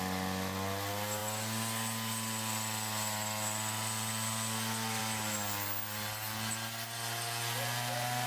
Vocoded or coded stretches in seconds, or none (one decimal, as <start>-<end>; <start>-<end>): none